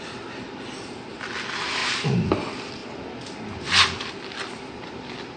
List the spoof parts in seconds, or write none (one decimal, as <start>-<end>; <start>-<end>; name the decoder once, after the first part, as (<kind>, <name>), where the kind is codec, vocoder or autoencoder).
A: none